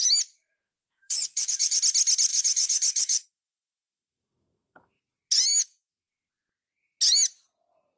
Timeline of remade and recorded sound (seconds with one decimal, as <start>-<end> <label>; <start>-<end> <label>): 0.0-0.6 recorded; 0.6-1.8 remade; 1.8-2.3 recorded; 2.3-5.0 remade; 5.0-5.5 recorded; 5.5-6.3 remade; 6.3-8.0 recorded